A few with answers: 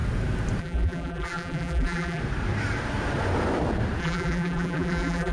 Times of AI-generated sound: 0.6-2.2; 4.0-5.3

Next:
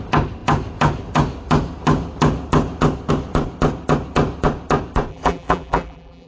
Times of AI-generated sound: 5.1-6.3

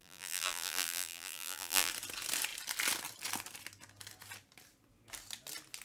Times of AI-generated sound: 0.0-1.9

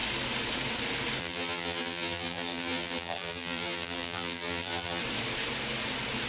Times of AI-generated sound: 1.2-5.0

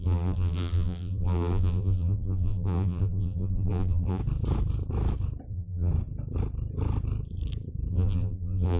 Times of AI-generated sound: 0.0-4.2; 5.5-5.9; 7.9-8.8

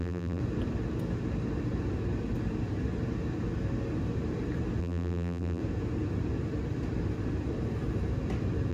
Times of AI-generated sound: 0.0-0.4; 4.8-5.6